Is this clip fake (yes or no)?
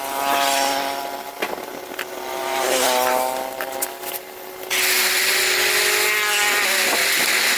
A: no